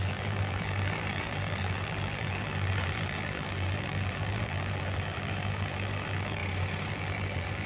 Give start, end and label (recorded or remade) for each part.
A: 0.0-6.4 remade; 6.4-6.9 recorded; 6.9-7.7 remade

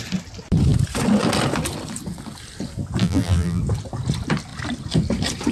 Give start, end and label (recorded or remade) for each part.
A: 0.0-3.0 recorded; 3.0-3.6 remade; 3.6-5.5 recorded

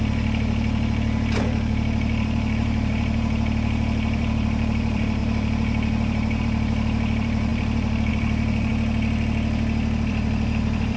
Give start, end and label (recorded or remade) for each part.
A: 0.0-8.7 remade; 8.7-10.1 recorded; 10.1-11.0 remade

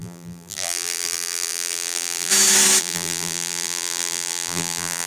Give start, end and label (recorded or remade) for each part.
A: 0.0-2.3 remade; 2.3-2.8 recorded; 2.8-5.1 remade

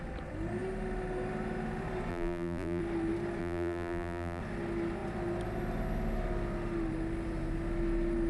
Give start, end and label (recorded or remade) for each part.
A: 0.0-2.1 recorded; 2.1-2.8 remade; 2.8-3.4 recorded; 3.4-4.4 remade; 4.4-8.3 recorded

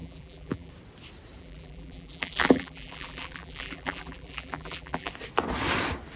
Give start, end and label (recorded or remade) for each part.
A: 0.0-0.7 remade; 0.7-1.4 recorded; 1.4-5.1 remade; 5.1-6.2 recorded

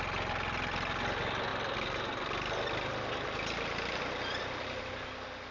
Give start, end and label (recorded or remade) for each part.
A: 0.0-1.5 recorded; 1.5-4.8 remade; 4.8-5.5 recorded